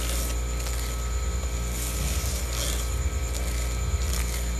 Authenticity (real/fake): real